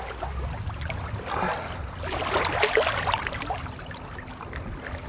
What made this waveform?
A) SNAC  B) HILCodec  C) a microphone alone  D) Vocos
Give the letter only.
C